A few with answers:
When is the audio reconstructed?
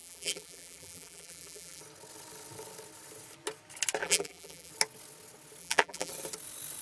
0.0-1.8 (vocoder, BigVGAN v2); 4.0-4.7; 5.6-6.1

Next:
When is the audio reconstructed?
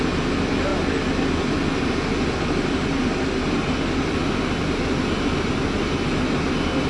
none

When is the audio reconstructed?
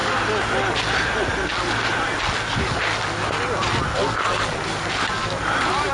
5.2-5.9 (vocoder, BigVGAN v2)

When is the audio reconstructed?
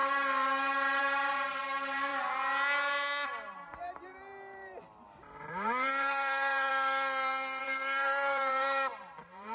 1.0-2.1 (vocoder, BigVGAN v2); 3.8-6.7; 7.6-9.5